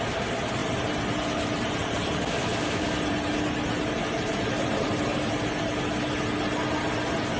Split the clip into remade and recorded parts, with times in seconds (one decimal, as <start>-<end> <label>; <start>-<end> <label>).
0.0-0.6 recorded; 0.6-1.7 remade; 1.7-2.5 recorded; 2.5-3.3 remade; 3.3-4.2 recorded; 4.2-4.9 remade; 4.9-7.4 recorded